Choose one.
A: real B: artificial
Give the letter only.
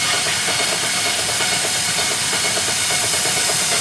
A